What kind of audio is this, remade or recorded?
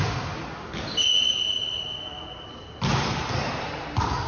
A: recorded